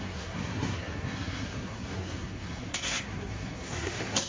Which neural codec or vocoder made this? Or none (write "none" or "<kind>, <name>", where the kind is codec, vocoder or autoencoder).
codec, SNAC